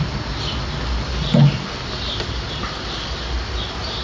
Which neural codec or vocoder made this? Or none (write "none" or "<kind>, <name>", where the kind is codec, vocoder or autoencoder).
none